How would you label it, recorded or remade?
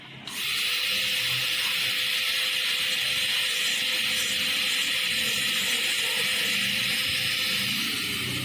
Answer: recorded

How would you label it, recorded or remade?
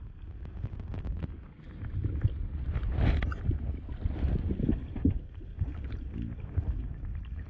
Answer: recorded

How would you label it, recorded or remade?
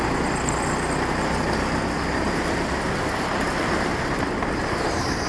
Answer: recorded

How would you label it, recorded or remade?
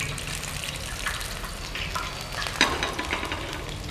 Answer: recorded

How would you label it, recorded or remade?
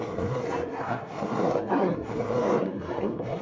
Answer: remade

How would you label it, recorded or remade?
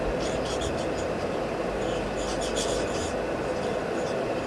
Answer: recorded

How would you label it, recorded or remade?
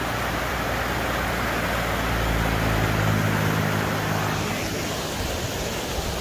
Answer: recorded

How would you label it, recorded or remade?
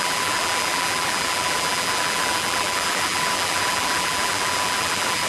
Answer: remade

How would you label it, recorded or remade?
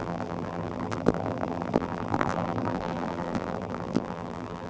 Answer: remade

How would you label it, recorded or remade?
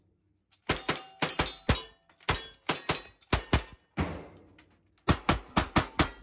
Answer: recorded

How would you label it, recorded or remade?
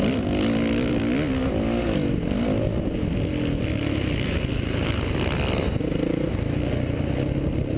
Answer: recorded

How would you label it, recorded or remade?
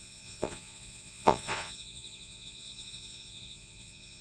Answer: remade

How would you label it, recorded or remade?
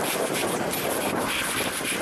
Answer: recorded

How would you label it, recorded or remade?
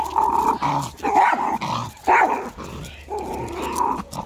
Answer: recorded